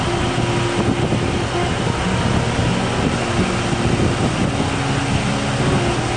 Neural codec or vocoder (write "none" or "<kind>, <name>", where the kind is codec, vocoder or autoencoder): none